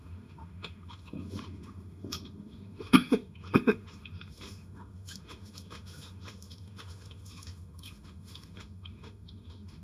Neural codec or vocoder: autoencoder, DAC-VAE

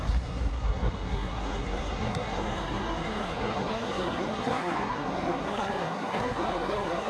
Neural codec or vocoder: codec, SNAC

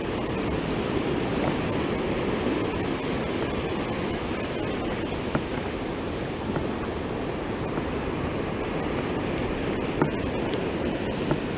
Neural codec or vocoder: none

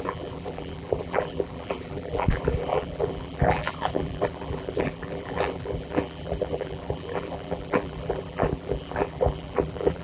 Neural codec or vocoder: vocoder, BigVGAN v2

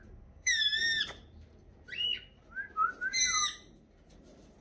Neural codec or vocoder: vocoder, BigVGAN v2